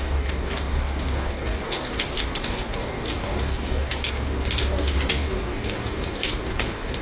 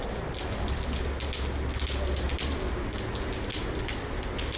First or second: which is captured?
second